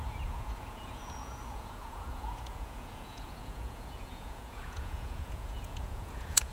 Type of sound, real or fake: fake